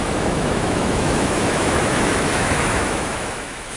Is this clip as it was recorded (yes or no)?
no